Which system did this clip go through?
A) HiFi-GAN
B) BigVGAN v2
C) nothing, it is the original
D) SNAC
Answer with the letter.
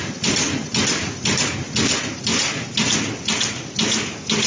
C